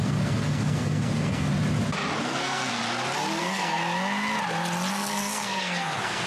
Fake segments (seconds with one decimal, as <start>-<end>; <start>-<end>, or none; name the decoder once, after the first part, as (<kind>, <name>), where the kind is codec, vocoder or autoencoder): 0.0-1.5 (codec, SNAC); 2.2-2.8; 3.4-3.8; 4.9-6.3